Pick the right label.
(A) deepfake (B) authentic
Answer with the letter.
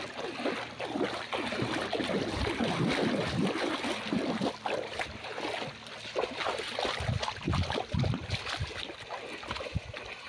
B